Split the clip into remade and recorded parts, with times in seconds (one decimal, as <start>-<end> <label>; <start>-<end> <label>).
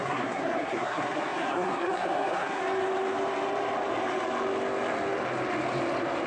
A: 0.0-2.6 remade; 2.6-6.3 recorded